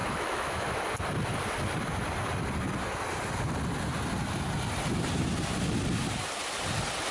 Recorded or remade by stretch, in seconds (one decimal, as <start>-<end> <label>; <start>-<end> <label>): 0.0-0.8 remade; 0.8-7.1 recorded